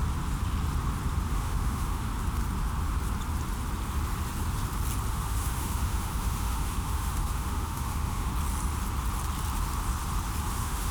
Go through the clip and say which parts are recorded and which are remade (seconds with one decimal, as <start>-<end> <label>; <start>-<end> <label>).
0.0-1.3 recorded; 1.3-2.1 remade; 2.1-5.1 recorded; 5.1-8.3 remade; 8.3-10.5 recorded; 10.5-10.9 remade